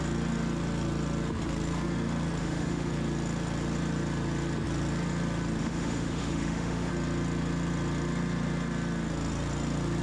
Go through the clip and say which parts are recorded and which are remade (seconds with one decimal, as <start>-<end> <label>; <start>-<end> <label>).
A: 0.0-2.4 recorded; 2.4-2.9 remade; 2.9-5.6 recorded; 5.6-6.9 remade; 6.9-10.0 recorded